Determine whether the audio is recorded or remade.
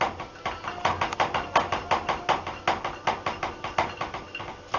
recorded